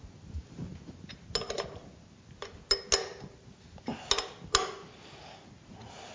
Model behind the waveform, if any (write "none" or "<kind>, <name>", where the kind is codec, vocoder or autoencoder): none